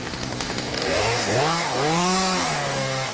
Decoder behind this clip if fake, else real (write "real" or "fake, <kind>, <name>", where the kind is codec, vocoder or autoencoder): fake, codec, DAC